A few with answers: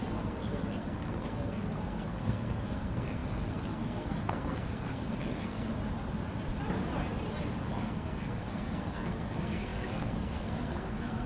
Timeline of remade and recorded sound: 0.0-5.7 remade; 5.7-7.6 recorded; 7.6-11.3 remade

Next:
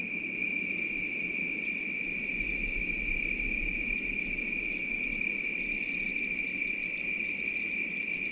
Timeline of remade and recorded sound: 0.0-6.1 recorded; 6.1-6.8 remade; 6.8-8.3 recorded

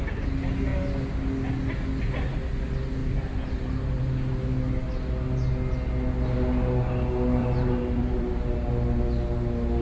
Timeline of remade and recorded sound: 0.0-3.0 recorded; 3.0-4.0 remade; 4.0-7.4 recorded; 7.4-8.7 remade; 8.7-9.8 recorded